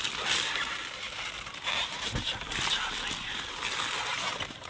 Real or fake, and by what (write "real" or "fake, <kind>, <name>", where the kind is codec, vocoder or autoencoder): real